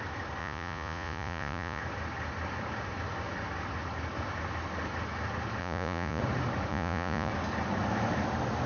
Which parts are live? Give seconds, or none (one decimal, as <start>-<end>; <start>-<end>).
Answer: 0.0-0.4; 1.8-5.6; 6.2-6.7; 7.3-8.7